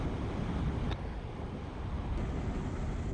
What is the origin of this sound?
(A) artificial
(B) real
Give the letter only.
B